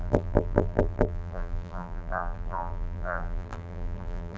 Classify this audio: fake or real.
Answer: fake